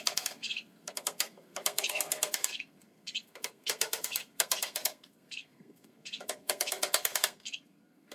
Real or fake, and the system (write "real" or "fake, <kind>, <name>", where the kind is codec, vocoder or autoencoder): fake, codec, SNAC